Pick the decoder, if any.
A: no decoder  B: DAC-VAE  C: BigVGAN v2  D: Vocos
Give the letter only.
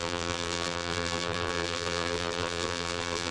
C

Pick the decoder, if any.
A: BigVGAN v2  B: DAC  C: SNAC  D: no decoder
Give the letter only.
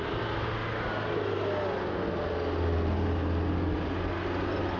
D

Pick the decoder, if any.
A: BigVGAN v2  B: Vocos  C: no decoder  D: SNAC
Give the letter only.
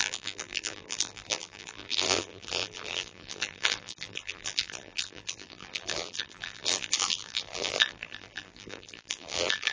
A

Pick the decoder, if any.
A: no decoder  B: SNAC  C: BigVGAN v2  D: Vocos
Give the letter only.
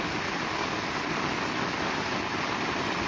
A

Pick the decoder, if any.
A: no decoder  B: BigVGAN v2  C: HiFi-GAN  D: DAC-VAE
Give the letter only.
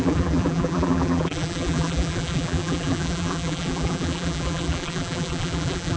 B